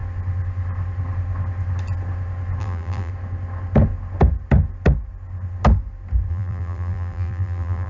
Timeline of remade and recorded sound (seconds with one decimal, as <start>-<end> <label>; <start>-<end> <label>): 0.0-2.6 recorded; 2.6-3.1 remade; 3.1-6.3 recorded; 6.3-7.9 remade